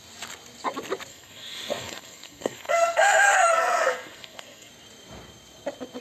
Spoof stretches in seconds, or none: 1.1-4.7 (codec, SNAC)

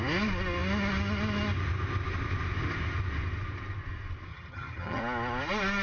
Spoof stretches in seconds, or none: 4.3-5.0 (vocoder, HiFi-GAN)

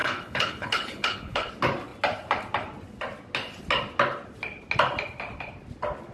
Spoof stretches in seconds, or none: 0.0-1.5 (codec, HILCodec)

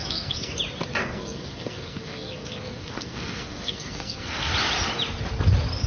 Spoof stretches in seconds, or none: 0.0-0.6 (codec, SNAC); 1.0-4.5

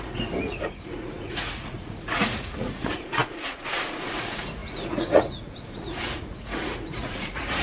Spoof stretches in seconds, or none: 0.0-7.6 (vocoder, Vocos)